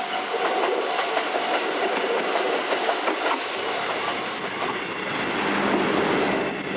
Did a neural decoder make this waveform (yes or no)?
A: no